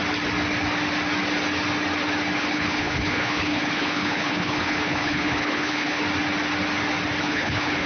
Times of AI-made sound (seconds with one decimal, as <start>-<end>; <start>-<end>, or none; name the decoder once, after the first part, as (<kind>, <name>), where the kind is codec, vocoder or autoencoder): 2.4-6.0 (codec, HILCodec); 7.2-7.9